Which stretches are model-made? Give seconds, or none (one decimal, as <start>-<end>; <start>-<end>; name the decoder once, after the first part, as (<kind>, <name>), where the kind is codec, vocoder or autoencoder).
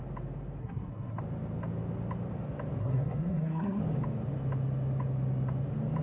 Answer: 0.6-1.2 (codec, SNAC); 2.8-3.8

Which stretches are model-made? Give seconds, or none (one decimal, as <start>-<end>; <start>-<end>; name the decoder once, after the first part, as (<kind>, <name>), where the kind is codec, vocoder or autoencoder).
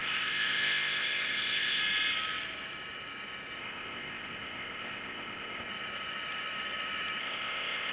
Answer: 0.0-1.8 (codec, ZipCodec); 3.6-5.7; 7.2-7.9